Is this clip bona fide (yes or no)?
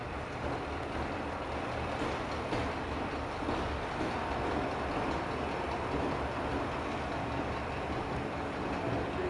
yes